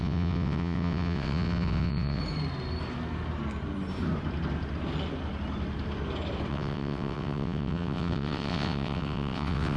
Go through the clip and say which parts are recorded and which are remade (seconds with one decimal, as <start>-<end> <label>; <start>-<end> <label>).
0.0-2.2 remade; 2.2-6.5 recorded; 6.5-9.8 remade